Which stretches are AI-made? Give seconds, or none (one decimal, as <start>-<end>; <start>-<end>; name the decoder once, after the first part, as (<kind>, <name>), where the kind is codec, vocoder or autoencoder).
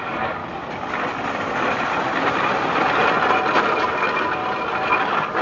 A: 0.0-0.4 (codec, DAC); 3.6-4.4; 5.0-5.4